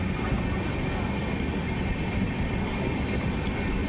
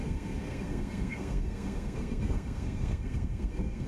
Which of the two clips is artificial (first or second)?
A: second